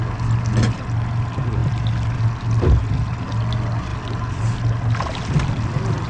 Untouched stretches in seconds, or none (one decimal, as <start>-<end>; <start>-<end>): 0.0-6.1